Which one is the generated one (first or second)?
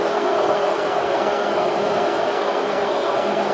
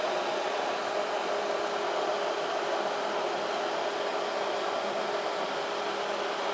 first